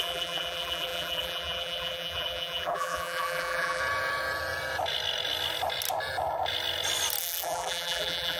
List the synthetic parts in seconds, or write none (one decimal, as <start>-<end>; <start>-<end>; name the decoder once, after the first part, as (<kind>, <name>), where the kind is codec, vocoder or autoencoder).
0.0-3.8 (vocoder, BigVGAN v2); 7.2-8.4